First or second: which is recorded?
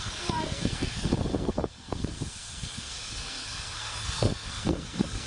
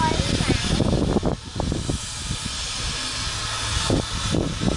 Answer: second